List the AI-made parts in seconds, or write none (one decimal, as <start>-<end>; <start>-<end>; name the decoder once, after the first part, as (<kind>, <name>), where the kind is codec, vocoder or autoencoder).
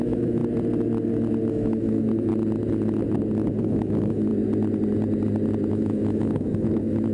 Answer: 0.0-0.4 (autoencoder, DAC-VAE); 1.5-2.3; 3.6-4.3; 5.7-7.1